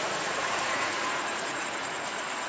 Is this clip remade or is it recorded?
remade